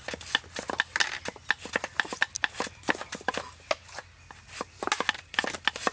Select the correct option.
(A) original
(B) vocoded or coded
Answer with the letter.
A